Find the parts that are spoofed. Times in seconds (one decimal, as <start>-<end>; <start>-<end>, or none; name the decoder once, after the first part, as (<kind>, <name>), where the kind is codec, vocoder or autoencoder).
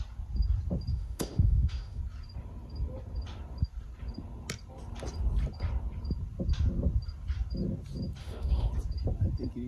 0.9-2.0 (autoencoder, DAC-VAE); 8.2-8.7